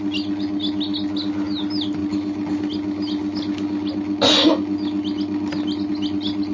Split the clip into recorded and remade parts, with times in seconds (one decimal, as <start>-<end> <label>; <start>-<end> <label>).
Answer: 0.0-6.5 recorded